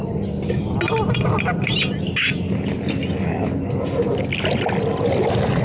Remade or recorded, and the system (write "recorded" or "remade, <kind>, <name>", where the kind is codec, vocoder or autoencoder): recorded